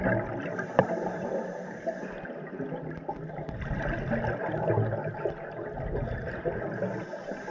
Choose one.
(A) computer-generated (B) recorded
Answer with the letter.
B